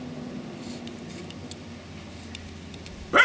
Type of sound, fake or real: real